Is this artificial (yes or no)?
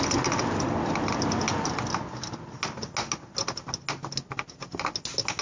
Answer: no